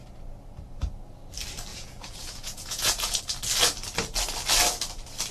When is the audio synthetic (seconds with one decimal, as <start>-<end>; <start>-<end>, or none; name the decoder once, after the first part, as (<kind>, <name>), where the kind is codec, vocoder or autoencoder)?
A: 1.7-3.2 (vocoder, Vocos)